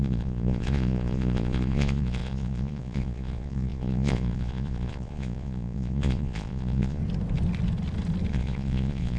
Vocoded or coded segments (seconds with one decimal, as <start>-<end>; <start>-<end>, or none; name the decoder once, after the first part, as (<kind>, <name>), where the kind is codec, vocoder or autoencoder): 0.0-7.0 (vocoder, Vocos); 8.3-9.2